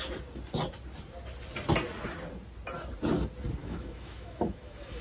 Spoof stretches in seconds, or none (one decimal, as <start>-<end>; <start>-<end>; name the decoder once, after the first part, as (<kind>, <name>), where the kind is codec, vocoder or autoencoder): 3.6-5.0 (autoencoder, DAC-VAE)